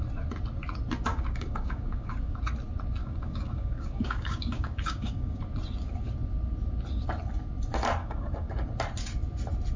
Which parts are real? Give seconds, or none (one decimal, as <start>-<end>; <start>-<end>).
0.0-1.1; 2.4-3.0; 5.4-8.0; 8.5-9.8